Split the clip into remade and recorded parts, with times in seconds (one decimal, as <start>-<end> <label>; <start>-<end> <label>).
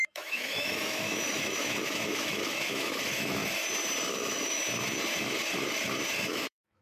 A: 0.0-3.4 remade; 3.4-4.1 recorded; 4.1-4.6 remade; 4.6-6.3 recorded; 6.3-6.8 remade